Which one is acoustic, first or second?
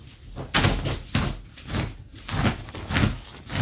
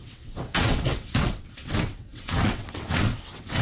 first